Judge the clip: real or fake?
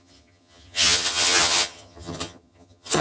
fake